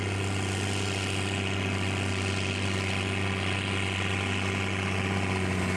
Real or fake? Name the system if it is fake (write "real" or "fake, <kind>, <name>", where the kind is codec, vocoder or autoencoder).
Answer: real